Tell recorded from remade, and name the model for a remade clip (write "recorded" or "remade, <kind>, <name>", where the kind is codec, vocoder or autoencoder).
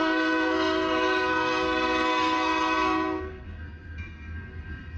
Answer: remade, codec, SNAC